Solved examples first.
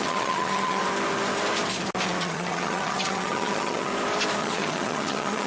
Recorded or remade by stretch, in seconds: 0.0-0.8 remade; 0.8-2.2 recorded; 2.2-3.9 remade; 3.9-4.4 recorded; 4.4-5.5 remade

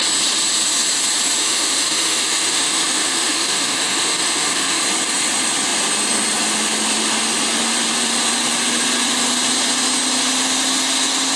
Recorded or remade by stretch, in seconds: 0.0-1.4 recorded; 1.4-4.8 remade; 4.8-11.4 recorded

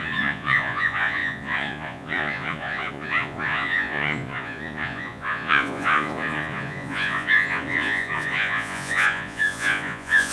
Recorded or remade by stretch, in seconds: 0.0-10.3 remade

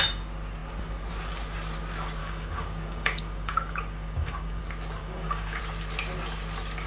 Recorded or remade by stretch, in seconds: 0.0-2.2 recorded; 2.2-4.6 remade; 4.6-5.0 recorded; 5.0-5.6 remade; 5.6-6.9 recorded

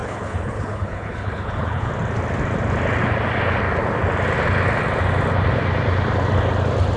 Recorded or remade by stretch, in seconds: 0.0-1.9 remade; 1.9-7.0 recorded

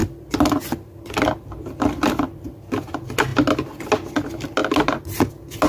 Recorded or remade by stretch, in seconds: 0.0-5.7 recorded

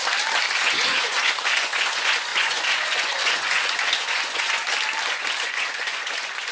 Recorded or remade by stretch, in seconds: 0.0-0.6 recorded; 0.6-4.6 remade; 4.6-5.1 recorded; 5.1-6.5 remade

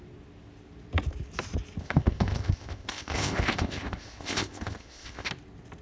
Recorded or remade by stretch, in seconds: 0.0-1.8 recorded; 1.8-5.3 remade; 5.3-5.8 recorded